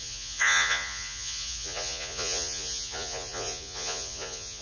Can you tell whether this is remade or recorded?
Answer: remade